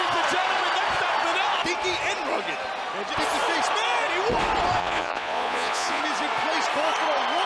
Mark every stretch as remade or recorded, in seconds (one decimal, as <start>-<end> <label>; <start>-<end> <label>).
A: 0.0-4.8 recorded; 4.8-6.0 remade; 6.0-7.5 recorded